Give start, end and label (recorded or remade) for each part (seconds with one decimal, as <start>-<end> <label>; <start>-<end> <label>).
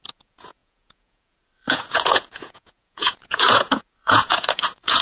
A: 0.0-5.0 remade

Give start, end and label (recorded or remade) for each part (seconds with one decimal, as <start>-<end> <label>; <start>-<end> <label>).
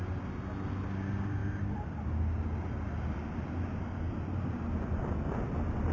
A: 0.0-5.9 recorded